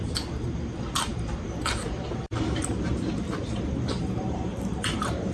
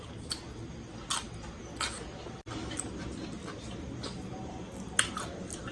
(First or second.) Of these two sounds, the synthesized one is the first